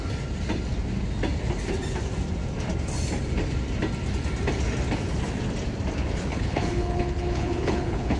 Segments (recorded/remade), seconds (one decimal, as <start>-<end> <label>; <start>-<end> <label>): 0.0-6.3 recorded; 6.3-8.2 remade